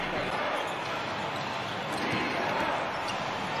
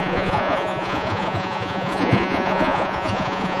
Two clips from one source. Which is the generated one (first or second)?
second